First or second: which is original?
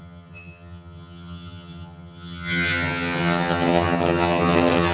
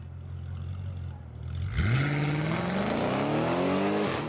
second